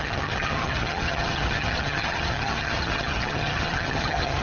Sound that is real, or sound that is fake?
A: fake